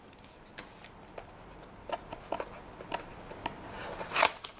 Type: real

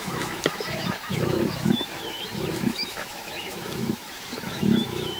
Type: fake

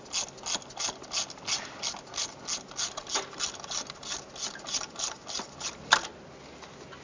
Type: real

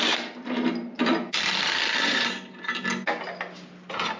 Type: real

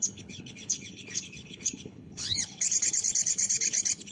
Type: fake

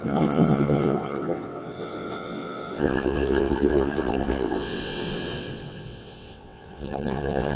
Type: fake